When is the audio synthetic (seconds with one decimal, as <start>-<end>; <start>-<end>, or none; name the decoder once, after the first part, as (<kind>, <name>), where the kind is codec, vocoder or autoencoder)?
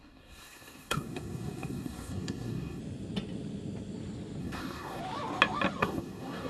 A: 0.0-2.8 (codec, SNAC); 4.4-5.0; 5.8-6.5